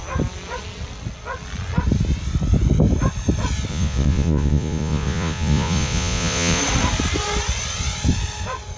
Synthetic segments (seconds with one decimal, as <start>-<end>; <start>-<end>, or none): 3.7-6.6